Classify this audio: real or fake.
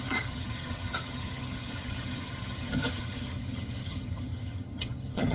fake